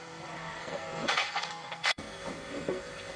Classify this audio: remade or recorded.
remade